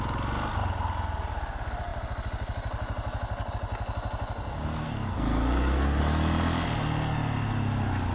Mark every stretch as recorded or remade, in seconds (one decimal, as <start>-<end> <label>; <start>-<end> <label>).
0.0-4.8 recorded; 4.8-6.0 remade; 6.0-8.1 recorded

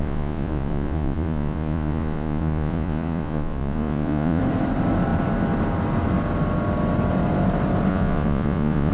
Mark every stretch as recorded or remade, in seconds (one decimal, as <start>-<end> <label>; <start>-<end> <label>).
0.0-4.4 remade; 4.4-7.9 recorded; 7.9-8.9 remade

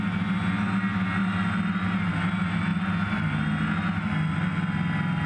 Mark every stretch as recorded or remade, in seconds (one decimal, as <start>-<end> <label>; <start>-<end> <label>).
0.0-5.3 recorded

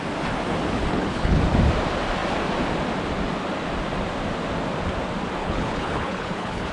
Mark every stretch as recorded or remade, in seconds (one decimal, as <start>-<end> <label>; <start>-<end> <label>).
0.0-0.9 recorded; 0.9-1.4 remade; 1.4-5.4 recorded; 5.4-6.7 remade

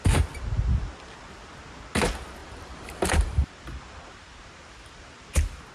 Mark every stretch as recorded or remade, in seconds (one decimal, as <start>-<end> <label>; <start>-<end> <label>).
0.0-2.4 recorded; 2.4-3.5 remade; 3.5-5.7 recorded

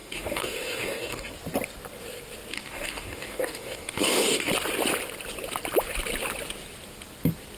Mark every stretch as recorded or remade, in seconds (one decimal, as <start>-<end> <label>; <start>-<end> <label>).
0.0-1.3 remade; 1.3-2.5 recorded; 2.5-4.5 remade; 4.5-7.6 recorded

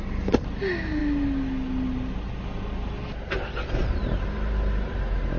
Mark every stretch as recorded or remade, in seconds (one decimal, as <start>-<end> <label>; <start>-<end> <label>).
0.0-5.4 recorded

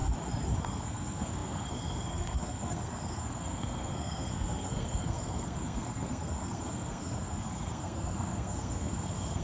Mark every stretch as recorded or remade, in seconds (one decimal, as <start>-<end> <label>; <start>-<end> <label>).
0.0-0.6 recorded; 0.6-9.4 remade